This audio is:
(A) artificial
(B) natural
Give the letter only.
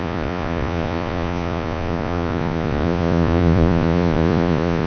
A